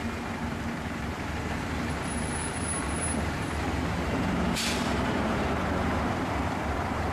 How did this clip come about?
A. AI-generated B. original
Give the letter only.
A